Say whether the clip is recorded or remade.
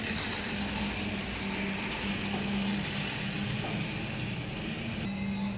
recorded